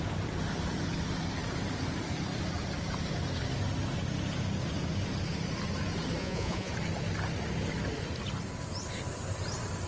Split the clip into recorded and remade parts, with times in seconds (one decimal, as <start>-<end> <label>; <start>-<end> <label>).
0.0-6.2 recorded; 6.2-6.7 remade; 6.7-9.9 recorded